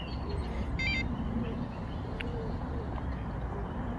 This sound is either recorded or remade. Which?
recorded